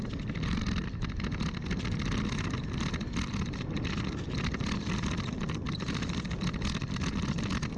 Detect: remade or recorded recorded